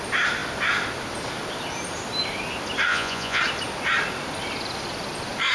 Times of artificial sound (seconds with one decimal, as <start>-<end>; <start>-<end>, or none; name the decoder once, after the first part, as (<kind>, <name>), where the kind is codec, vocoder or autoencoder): 2.9-3.4 (vocoder, Vocos)